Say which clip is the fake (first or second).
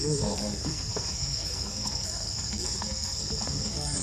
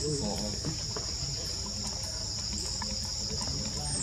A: first